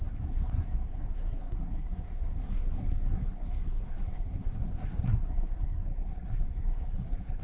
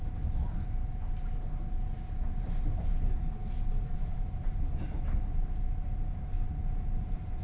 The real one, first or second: second